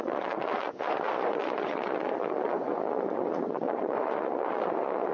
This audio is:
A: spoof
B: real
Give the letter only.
A